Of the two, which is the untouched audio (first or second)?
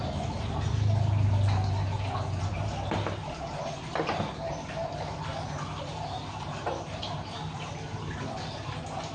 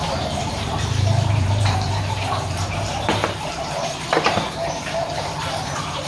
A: first